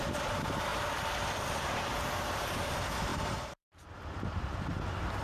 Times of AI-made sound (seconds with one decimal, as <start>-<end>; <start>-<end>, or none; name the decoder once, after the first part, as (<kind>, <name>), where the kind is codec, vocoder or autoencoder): 0.0-0.7 (vocoder, BigVGAN v2); 1.2-5.2